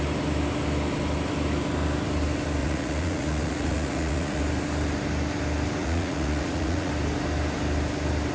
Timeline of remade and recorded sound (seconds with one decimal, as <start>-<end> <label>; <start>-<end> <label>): 0.0-2.6 recorded; 2.6-4.4 remade; 4.4-5.8 recorded; 5.8-6.9 remade; 6.9-8.3 recorded